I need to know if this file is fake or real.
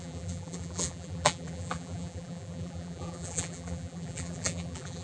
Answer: fake